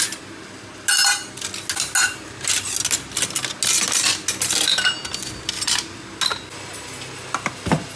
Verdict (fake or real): real